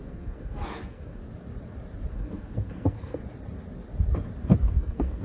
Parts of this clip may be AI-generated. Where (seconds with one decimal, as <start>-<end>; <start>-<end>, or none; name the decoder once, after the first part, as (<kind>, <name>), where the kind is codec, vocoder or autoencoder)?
0.0-1.2 (codec, SNAC); 2.1-3.2; 4.7-5.2